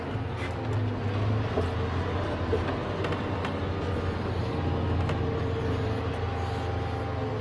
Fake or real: real